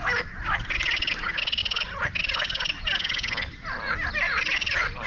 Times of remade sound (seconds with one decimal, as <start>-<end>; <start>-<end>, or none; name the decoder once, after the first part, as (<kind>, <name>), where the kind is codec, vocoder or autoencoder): none